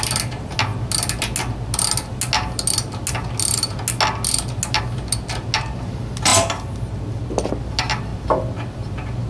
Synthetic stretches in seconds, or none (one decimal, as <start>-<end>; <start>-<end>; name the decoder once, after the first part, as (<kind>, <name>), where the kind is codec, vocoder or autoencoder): none